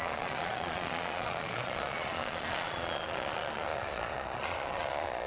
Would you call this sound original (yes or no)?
no